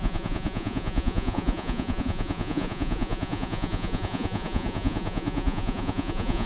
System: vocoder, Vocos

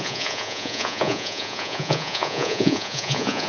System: vocoder, Vocos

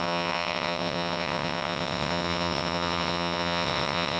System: vocoder, WaveNeXt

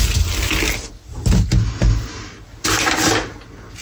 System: none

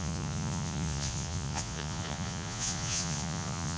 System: vocoder, Vocos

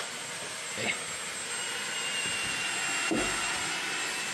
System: none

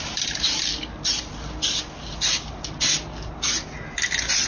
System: none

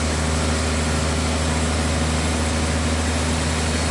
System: none